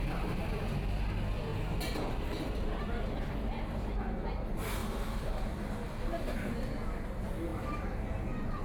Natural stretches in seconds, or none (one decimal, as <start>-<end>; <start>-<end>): 0.0-8.6